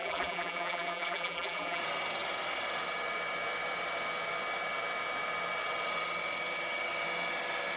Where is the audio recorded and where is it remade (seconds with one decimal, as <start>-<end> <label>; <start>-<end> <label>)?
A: 0.0-1.8 remade; 1.8-7.8 recorded